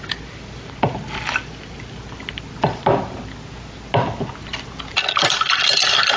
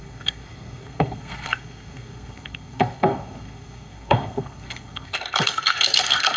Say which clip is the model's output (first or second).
second